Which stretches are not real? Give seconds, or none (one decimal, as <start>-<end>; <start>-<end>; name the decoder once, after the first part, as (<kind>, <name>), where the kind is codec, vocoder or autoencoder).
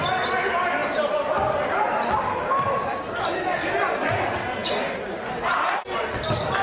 none